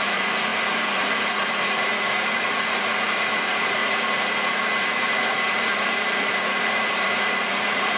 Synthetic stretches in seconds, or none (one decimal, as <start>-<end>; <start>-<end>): 0.0-8.0